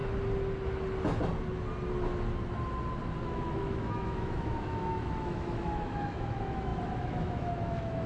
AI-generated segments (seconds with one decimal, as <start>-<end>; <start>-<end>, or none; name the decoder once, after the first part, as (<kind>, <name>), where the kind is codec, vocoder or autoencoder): 3.2-8.1 (autoencoder, DAC-VAE)

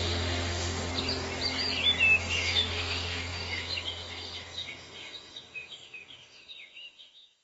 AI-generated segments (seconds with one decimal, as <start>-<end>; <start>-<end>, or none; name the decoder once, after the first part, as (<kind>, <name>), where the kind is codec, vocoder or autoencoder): 0.0-0.9 (autoencoder, DAC-VAE); 2.2-7.4

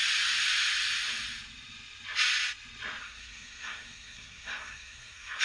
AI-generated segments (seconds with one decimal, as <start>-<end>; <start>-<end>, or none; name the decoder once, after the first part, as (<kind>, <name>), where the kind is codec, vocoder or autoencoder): 3.0-5.4 (codec, SNAC)

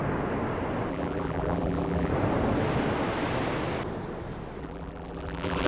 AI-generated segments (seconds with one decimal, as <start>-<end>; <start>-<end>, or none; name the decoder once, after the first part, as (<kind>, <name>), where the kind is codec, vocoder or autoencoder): 0.9-2.1 (vocoder, BigVGAN v2); 4.6-5.7

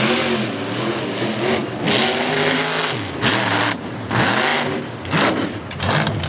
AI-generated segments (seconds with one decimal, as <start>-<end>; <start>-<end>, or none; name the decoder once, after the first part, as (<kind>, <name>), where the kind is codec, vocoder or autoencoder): none